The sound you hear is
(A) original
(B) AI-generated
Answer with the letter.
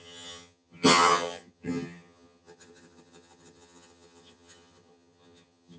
B